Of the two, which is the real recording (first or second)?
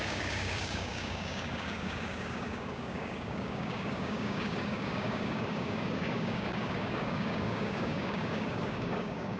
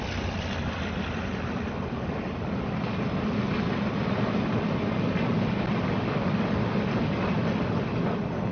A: second